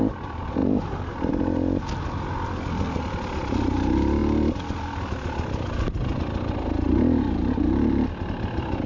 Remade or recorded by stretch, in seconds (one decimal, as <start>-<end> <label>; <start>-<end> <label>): 0.0-0.6 recorded; 0.6-1.3 remade; 1.3-8.9 recorded